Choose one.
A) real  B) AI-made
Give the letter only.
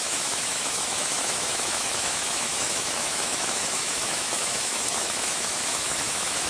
B